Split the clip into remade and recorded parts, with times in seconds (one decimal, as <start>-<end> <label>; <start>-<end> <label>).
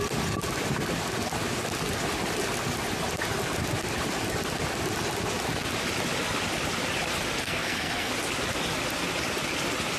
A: 0.0-7.4 recorded; 7.4-8.1 remade; 8.1-10.0 recorded